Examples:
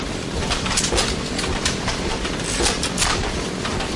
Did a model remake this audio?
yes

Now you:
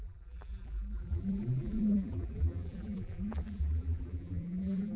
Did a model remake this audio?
yes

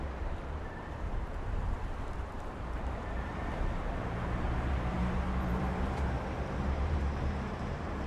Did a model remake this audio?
yes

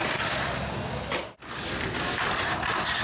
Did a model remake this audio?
no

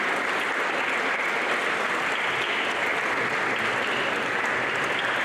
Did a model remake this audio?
no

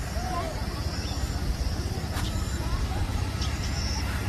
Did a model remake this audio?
yes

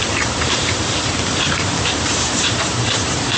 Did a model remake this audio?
yes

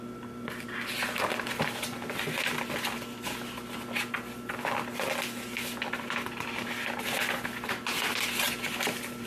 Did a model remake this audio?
no